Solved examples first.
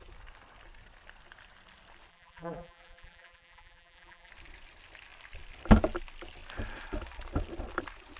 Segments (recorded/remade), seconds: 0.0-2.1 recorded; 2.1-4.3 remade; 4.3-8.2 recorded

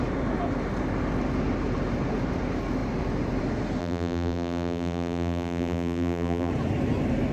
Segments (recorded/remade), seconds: 0.0-3.8 recorded; 3.8-6.5 remade; 6.5-7.3 recorded

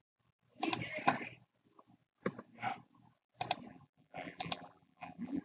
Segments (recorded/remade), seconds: 0.0-3.7 recorded; 3.7-5.4 remade

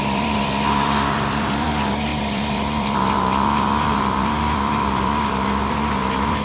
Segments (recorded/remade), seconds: 0.0-6.4 remade

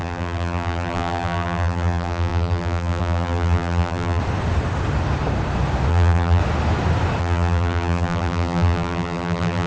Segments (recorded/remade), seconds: 0.0-4.2 remade; 4.2-5.9 recorded; 5.9-6.4 remade; 6.4-7.2 recorded; 7.2-9.7 remade

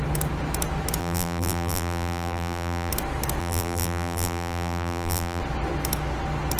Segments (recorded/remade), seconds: 0.0-1.0 recorded; 1.0-2.9 remade; 2.9-3.4 recorded; 3.4-5.4 remade; 5.4-6.6 recorded